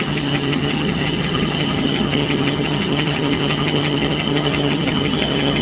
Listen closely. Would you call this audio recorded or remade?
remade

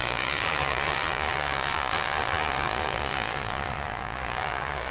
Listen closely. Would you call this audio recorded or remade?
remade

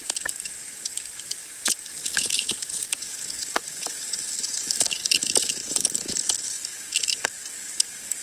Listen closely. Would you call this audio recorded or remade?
remade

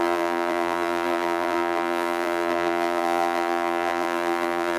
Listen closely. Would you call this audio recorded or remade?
remade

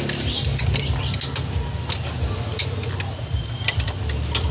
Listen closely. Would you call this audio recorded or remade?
recorded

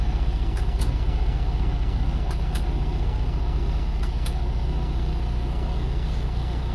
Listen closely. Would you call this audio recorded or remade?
remade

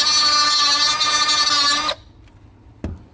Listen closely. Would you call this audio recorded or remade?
recorded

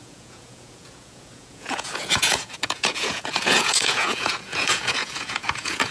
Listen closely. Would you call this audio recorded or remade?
remade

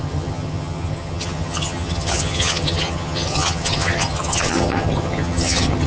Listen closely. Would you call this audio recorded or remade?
remade